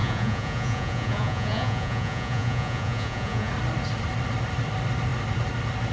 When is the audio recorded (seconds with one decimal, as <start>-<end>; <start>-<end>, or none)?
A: 3.5-5.9